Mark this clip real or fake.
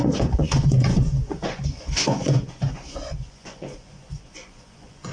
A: fake